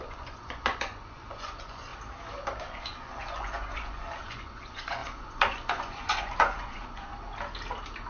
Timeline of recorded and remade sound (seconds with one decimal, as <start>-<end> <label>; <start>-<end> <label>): 0.0-1.9 remade; 1.9-2.6 recorded; 2.6-7.1 remade; 7.1-8.1 recorded